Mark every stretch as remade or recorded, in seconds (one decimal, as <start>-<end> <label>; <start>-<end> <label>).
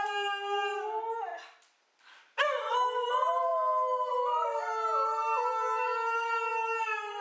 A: 0.0-7.2 recorded